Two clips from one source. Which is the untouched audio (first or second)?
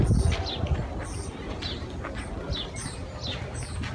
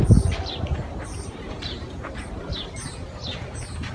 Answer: first